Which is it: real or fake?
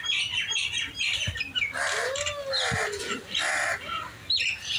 fake